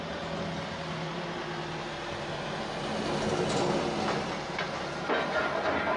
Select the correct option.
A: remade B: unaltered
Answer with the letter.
B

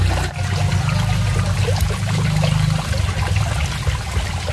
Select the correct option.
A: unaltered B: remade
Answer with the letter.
A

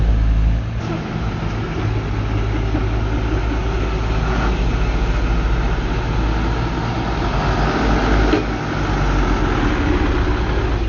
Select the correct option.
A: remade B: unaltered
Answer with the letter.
B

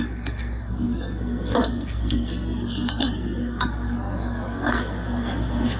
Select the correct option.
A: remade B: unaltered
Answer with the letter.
A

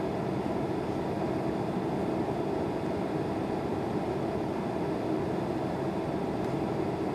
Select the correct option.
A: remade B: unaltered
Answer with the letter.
B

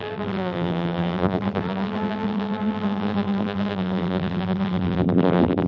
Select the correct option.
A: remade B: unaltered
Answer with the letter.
A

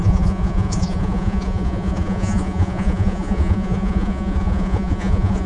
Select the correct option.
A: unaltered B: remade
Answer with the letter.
B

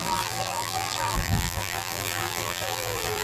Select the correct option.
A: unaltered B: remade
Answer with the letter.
B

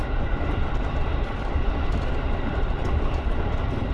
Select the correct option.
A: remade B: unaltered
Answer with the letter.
B